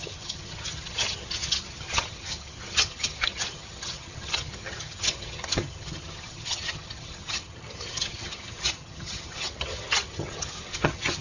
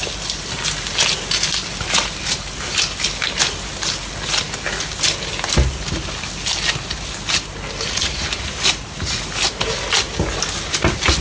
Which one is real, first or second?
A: second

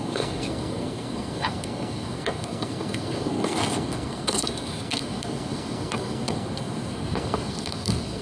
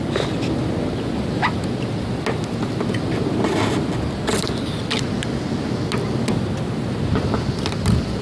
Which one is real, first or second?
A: second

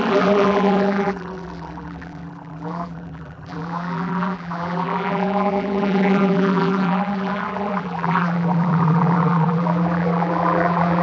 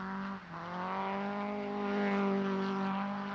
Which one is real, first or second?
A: second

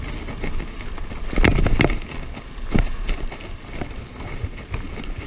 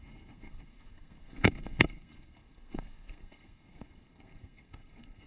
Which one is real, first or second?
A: first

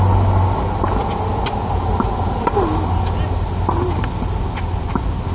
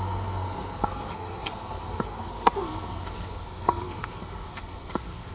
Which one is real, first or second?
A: first